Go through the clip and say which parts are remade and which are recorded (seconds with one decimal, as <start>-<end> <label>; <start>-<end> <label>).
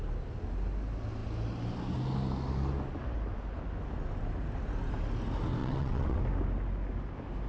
0.0-5.6 recorded; 5.6-6.2 remade; 6.2-7.5 recorded